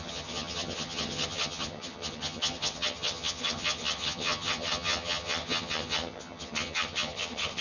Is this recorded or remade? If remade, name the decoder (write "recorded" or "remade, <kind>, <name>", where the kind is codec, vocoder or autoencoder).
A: remade, vocoder, HiFi-GAN